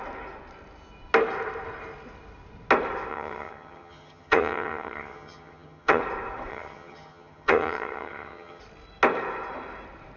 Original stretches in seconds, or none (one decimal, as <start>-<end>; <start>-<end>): 0.0-3.1; 6.0-6.5; 8.6-10.2